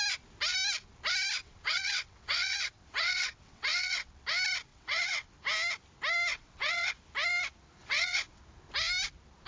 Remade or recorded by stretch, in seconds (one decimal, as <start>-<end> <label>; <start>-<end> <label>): 0.0-1.4 recorded; 1.4-4.1 remade; 4.1-4.7 recorded; 4.7-5.3 remade; 5.3-6.3 recorded; 6.3-6.9 remade; 6.9-7.8 recorded; 7.8-8.4 remade; 8.4-9.5 recorded